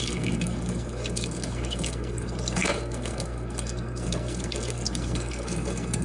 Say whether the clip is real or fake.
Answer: fake